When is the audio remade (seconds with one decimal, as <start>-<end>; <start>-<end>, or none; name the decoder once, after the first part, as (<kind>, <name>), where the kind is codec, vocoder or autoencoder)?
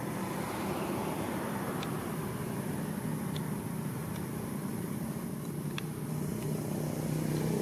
0.0-6.3 (vocoder, BigVGAN v2); 6.8-7.6